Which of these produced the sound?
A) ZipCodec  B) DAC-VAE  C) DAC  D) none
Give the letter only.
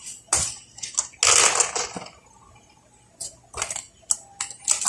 D